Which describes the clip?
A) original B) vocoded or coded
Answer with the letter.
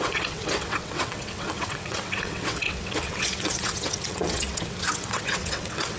B